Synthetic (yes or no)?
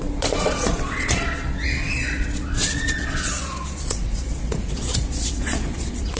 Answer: yes